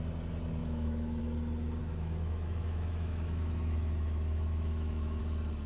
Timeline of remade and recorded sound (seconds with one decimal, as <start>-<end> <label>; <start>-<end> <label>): 0.0-0.6 recorded; 0.6-1.2 remade; 1.2-1.8 recorded; 1.8-5.2 remade; 5.2-5.7 recorded